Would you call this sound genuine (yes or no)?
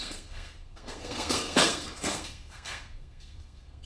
no